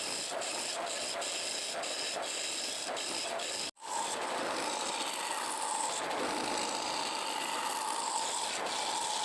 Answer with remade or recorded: recorded